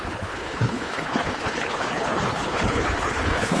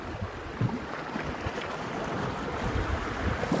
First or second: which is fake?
first